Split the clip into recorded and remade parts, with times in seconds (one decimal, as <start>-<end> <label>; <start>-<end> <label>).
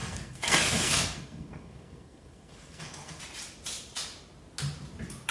0.0-3.2 remade; 3.2-5.3 recorded